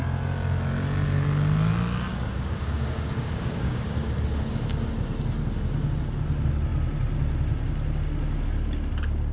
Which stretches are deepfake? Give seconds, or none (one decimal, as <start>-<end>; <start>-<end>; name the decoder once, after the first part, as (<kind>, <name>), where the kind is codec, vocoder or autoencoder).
2.1-4.1 (codec, DAC)